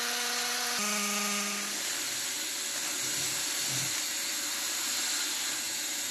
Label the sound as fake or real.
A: real